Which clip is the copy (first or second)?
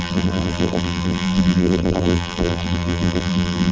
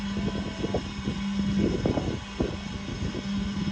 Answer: first